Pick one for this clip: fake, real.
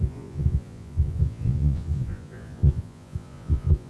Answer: fake